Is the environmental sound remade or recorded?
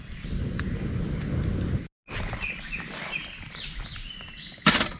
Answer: recorded